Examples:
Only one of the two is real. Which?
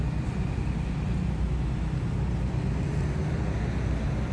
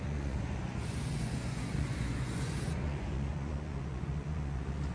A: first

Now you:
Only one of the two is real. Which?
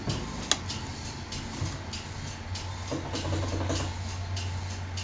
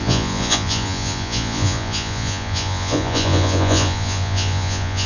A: first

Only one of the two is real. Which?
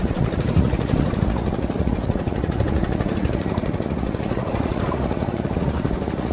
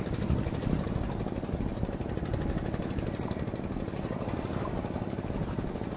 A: second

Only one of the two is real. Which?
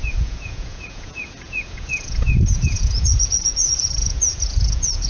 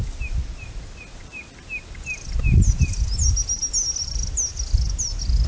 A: second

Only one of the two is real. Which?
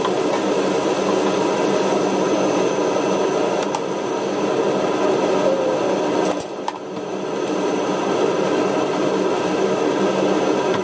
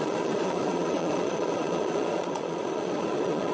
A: first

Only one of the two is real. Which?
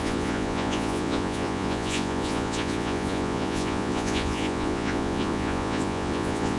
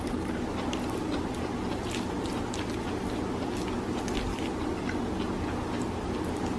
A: second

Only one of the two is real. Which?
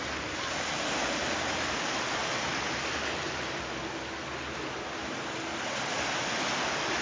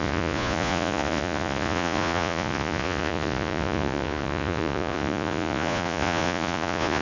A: first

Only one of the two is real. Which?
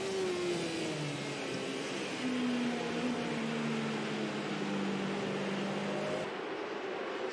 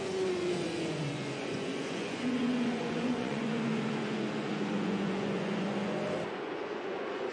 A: first